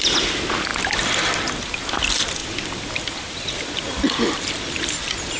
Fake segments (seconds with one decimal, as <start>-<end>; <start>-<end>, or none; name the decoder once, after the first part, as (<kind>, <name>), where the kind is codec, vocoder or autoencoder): 0.7-1.3 (vocoder, BigVGAN v2); 2.4-4.2